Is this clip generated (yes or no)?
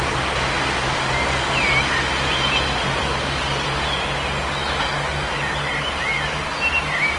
no